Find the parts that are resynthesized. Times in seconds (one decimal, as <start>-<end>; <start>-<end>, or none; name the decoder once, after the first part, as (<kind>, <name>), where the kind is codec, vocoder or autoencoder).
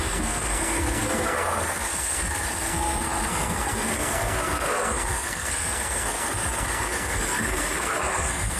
0.0-8.6 (codec, SNAC)